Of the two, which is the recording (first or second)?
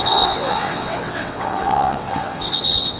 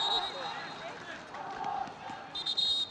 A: second